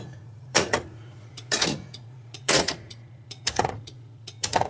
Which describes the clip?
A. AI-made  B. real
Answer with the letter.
A